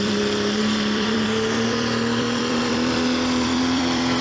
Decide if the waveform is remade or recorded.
remade